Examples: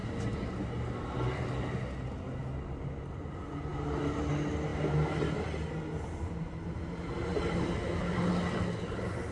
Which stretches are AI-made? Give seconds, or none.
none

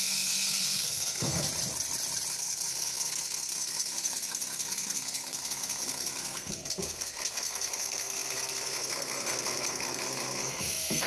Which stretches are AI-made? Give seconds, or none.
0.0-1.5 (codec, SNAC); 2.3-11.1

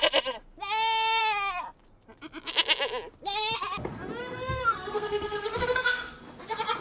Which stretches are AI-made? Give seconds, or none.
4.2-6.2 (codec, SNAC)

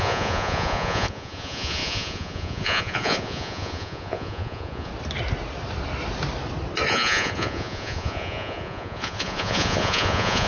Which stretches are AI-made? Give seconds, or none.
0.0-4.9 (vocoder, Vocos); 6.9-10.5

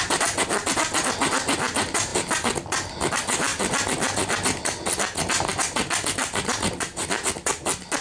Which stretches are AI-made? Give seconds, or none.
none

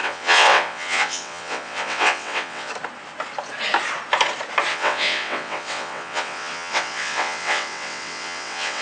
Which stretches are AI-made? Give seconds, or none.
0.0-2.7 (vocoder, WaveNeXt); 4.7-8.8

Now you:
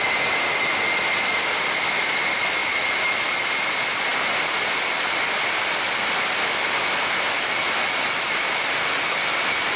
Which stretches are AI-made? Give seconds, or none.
none

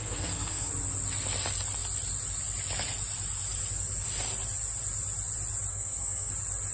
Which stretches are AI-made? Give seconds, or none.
0.0-0.7 (codec, SNAC); 5.7-6.3